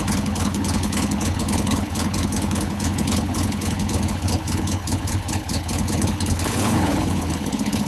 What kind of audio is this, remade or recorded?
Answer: remade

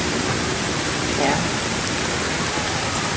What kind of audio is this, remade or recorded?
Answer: recorded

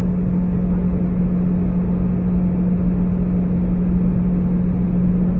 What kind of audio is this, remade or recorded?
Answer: recorded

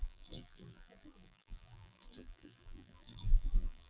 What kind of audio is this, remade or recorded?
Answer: remade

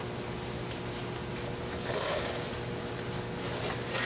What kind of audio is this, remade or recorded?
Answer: recorded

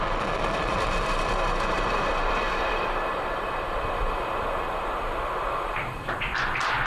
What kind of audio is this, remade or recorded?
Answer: remade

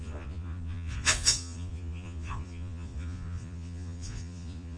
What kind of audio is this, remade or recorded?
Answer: remade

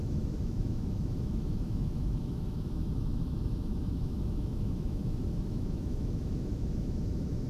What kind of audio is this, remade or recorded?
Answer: remade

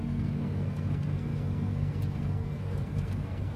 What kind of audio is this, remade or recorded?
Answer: remade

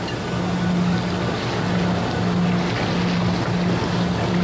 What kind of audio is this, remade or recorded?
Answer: recorded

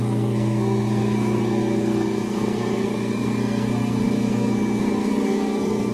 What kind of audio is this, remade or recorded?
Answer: remade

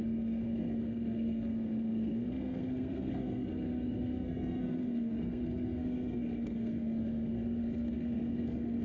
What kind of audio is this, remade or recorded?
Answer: remade